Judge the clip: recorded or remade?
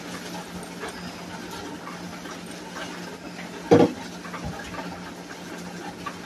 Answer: recorded